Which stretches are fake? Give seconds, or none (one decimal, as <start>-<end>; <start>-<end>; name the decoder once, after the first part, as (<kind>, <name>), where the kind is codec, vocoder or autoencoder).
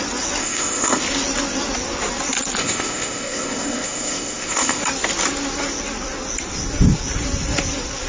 0.4-1.0 (codec, ZipCodec); 2.6-4.8